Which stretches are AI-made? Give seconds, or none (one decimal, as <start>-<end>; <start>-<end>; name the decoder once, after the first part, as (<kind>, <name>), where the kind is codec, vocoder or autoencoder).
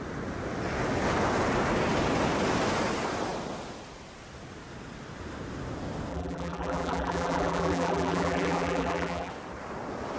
6.1-9.3 (vocoder, BigVGAN v2)